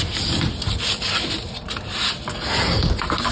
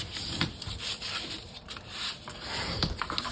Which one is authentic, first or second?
first